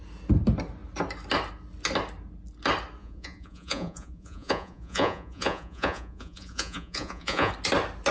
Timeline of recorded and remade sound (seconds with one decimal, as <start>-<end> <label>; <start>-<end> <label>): 0.0-3.0 recorded; 3.0-7.5 remade; 7.5-8.1 recorded